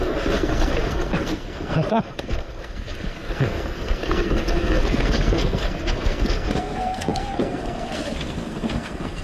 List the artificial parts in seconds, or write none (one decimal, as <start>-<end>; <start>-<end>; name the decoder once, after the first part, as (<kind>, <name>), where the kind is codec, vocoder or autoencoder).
0.0-9.2 (codec, SNAC)